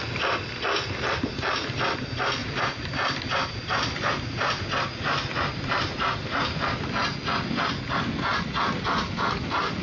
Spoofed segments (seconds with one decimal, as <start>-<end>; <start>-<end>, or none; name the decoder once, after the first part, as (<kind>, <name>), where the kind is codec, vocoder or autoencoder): 2.4-6.5 (vocoder, BigVGAN v2)